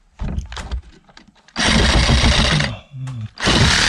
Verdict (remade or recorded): recorded